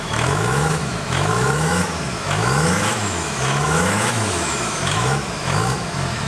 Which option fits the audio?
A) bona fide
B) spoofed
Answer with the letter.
B